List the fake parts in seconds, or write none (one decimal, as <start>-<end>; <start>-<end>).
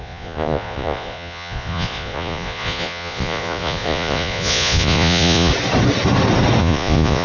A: 0.0-5.5; 6.6-7.2